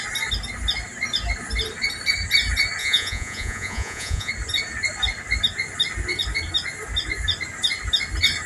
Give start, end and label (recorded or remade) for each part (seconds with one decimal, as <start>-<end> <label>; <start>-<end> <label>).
0.0-2.8 recorded; 2.8-4.3 remade; 4.3-8.5 recorded